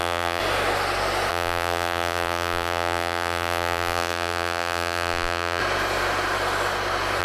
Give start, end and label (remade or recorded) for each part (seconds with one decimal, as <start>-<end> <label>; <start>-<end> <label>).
0.0-0.4 remade; 0.4-1.3 recorded; 1.3-5.6 remade; 5.6-7.2 recorded